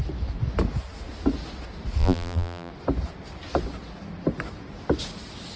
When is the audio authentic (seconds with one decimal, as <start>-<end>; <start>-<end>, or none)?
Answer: 0.0-2.0; 2.7-5.6